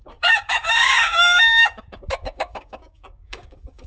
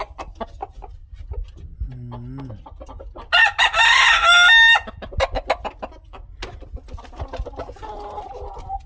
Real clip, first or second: second